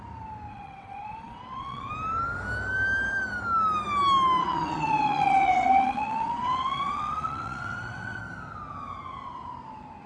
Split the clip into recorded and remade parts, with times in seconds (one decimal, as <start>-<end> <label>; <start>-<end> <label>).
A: 0.0-0.5 recorded; 0.5-1.9 remade; 1.9-4.4 recorded; 4.4-8.2 remade; 8.2-10.1 recorded